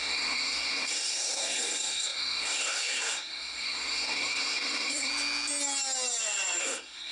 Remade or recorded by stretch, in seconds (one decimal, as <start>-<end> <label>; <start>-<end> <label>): 0.0-5.1 remade; 5.1-6.6 recorded; 6.6-7.1 remade